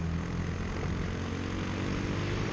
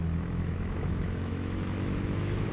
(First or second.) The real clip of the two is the first